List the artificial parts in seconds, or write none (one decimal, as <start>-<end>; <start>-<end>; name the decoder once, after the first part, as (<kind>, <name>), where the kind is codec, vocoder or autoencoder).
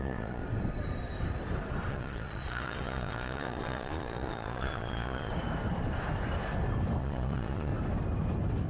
0.0-0.4 (vocoder, Vocos); 1.9-5.3; 7.0-7.7